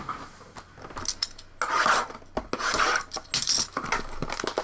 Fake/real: real